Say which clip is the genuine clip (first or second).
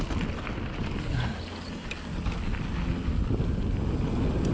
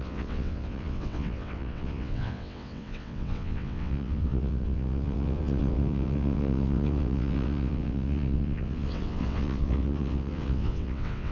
first